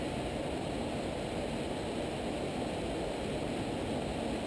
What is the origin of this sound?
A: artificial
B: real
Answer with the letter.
B